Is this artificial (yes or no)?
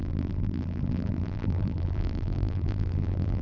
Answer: yes